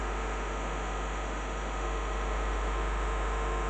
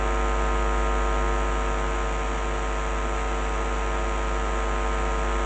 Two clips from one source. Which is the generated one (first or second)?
first